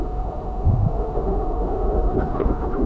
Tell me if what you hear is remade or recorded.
remade